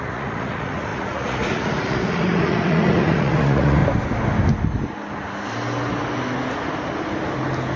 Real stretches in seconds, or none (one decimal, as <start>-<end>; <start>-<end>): 3.8-7.8